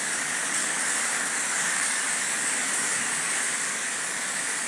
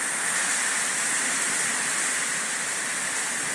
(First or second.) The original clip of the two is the second